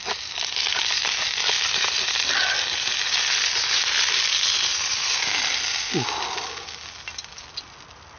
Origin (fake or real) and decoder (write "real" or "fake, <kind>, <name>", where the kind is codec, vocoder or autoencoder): real